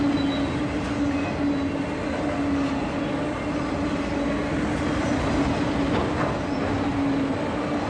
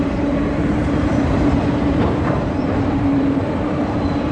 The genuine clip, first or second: first